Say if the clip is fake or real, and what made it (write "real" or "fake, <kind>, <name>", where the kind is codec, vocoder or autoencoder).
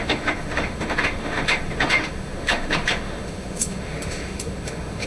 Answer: fake, autoencoder, DAC-VAE